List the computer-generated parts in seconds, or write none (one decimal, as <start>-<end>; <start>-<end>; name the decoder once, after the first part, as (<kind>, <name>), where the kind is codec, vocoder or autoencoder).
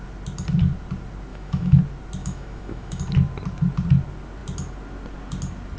1.3-1.8 (autoencoder, DAC-VAE); 2.2-3.0